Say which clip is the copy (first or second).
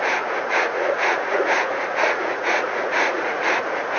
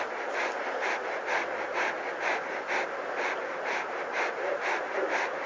first